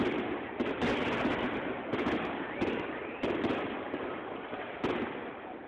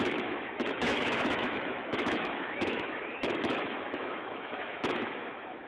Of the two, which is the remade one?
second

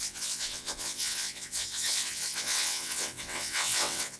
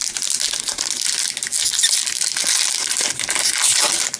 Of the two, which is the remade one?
first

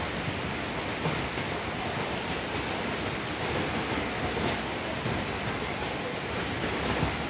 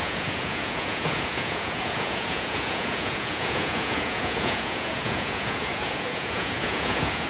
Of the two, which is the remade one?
second